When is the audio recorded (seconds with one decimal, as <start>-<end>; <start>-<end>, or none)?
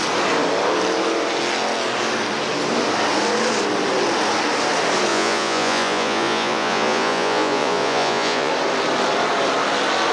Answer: 0.0-5.1; 8.5-10.1